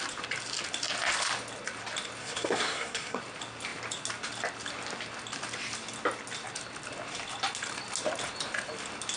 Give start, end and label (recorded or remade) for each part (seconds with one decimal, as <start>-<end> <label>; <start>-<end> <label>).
0.0-2.2 recorded; 2.2-3.2 remade; 3.2-9.2 recorded